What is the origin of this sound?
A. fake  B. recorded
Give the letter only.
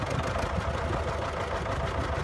B